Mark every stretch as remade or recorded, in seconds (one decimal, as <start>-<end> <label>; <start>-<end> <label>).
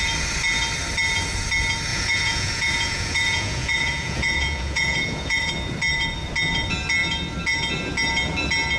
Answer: 0.0-1.9 recorded; 1.9-5.5 remade; 5.5-8.8 recorded